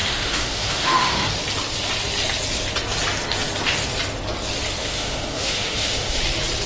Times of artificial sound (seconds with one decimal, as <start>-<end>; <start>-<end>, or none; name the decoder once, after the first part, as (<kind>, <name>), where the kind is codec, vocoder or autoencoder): 0.0-1.3 (autoencoder, DAC-VAE); 4.8-6.2